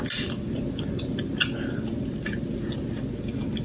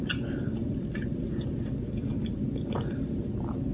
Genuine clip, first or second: first